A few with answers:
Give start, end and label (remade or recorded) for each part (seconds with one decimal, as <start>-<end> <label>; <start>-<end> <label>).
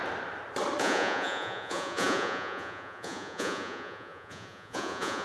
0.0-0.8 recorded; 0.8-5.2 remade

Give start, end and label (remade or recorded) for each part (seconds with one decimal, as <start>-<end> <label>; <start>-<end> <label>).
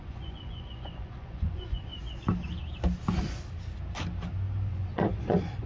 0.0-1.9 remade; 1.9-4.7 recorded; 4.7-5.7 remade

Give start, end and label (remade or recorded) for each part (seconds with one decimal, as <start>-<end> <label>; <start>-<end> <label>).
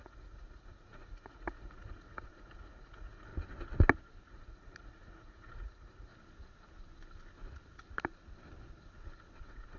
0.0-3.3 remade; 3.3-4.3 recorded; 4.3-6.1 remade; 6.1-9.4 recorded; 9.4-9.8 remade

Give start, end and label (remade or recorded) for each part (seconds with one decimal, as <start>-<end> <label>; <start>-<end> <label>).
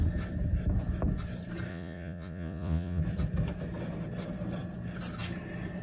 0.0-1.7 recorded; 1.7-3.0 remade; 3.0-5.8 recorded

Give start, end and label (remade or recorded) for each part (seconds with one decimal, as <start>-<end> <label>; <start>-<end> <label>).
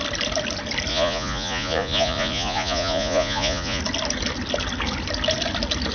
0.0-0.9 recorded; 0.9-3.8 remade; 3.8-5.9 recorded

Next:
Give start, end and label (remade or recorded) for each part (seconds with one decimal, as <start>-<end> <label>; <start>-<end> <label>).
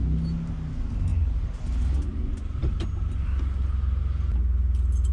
0.0-5.1 recorded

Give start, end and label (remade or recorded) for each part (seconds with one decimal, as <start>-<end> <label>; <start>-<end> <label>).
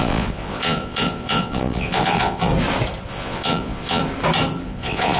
0.0-2.5 remade; 2.5-3.1 recorded; 3.1-4.0 remade; 4.0-4.6 recorded; 4.6-5.2 remade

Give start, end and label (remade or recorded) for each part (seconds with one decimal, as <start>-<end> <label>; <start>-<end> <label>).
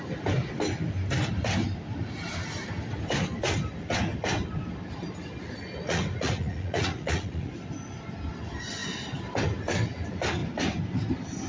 0.0-5.8 recorded; 5.8-7.5 remade; 7.5-11.5 recorded